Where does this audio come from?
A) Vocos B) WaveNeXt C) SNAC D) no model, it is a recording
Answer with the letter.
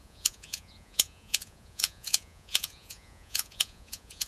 A